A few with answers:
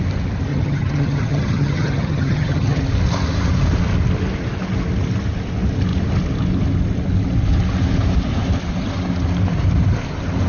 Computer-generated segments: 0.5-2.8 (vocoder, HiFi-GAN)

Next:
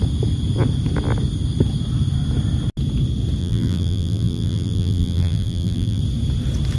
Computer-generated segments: 3.4-6.0 (vocoder, BigVGAN v2)

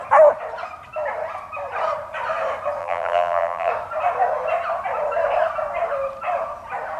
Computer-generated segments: 2.8-3.7 (vocoder, BigVGAN v2)

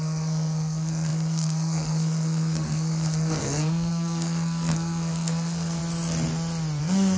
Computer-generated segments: 0.0-5.8 (codec, SNAC); 6.8-7.2

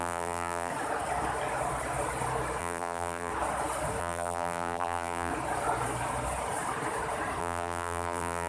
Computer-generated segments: 0.0-0.7 (vocoder, BigVGAN v2); 2.6-3.3; 4.0-5.3; 7.4-8.5